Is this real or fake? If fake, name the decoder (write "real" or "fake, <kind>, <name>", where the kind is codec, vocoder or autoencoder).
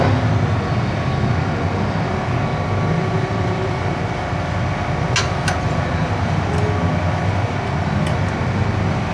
real